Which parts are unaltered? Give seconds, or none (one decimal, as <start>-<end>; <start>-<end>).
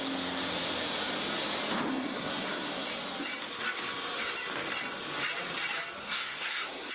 0.0-1.9; 2.9-6.0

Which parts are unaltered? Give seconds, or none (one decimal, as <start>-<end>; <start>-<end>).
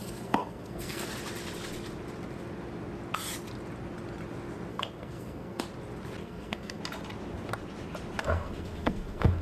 1.1-4.7; 5.6-6.2; 6.8-8.2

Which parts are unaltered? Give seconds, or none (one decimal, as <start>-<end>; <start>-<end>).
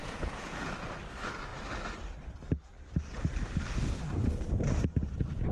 0.7-5.5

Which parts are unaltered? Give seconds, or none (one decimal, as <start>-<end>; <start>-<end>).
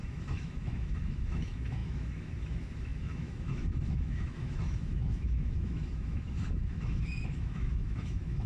none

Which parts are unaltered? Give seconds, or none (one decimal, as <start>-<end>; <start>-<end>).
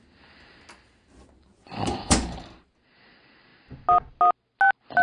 0.0-1.5; 2.4-5.0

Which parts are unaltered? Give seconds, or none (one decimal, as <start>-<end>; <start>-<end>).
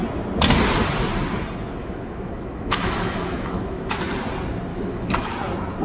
0.0-1.8; 4.0-4.7; 5.3-5.8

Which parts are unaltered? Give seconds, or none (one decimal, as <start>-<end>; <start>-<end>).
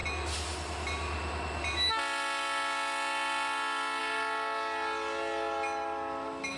0.0-6.6